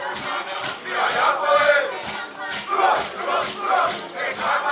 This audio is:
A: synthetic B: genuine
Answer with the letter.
B